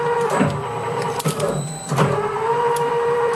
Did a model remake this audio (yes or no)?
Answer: yes